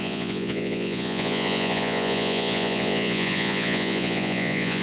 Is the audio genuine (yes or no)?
no